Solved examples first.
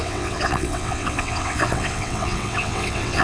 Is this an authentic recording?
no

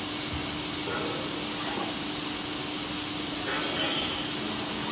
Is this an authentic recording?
yes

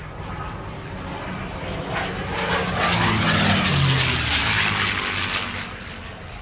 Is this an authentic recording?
yes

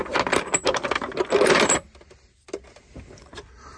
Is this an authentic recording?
yes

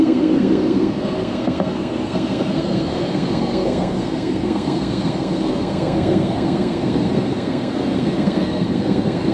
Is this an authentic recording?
no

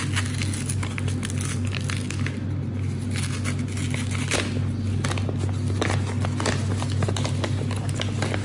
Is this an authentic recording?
yes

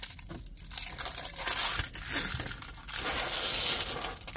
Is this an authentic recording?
yes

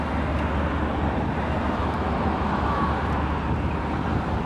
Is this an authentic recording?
yes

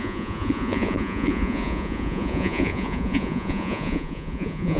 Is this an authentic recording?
no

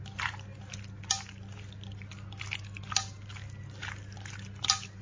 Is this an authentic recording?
yes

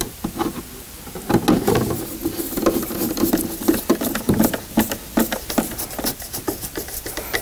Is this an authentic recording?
yes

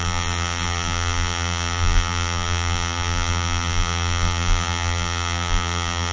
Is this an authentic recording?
no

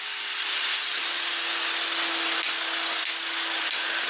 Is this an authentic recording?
yes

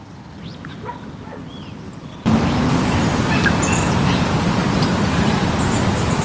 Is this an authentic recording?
yes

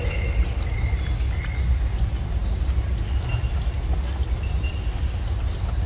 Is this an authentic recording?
yes